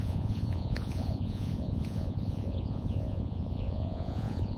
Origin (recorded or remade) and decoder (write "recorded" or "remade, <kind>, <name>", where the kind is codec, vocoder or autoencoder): remade, vocoder, Vocos